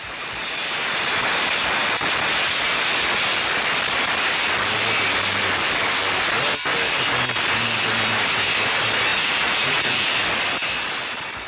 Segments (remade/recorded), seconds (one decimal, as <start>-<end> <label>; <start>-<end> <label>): 0.0-9.1 recorded; 9.1-10.1 remade; 10.1-11.5 recorded

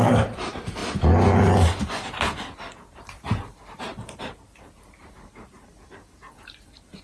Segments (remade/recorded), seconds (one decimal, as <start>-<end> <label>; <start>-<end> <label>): 0.0-0.8 remade; 0.8-2.9 recorded; 2.9-7.0 remade